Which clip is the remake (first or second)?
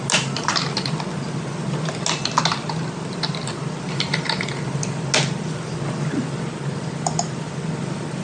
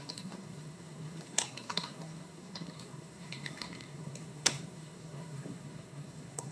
second